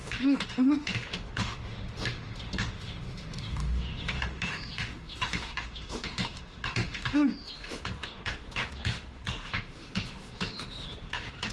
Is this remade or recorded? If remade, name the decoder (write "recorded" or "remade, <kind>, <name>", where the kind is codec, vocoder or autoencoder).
remade, autoencoder, DAC-VAE